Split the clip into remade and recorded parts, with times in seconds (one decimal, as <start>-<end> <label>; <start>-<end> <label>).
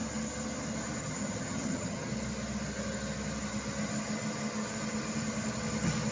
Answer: 0.0-1.0 recorded; 1.0-2.1 remade; 2.1-6.1 recorded